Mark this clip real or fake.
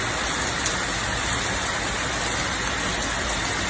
real